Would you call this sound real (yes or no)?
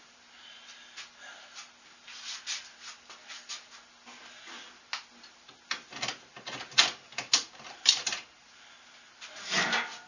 yes